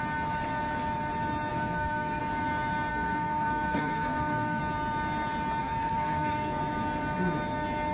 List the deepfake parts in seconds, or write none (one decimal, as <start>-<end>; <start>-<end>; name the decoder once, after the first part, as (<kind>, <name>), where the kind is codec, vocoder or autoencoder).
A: 1.5-2.2 (codec, SNAC); 2.9-4.6; 5.6-6.6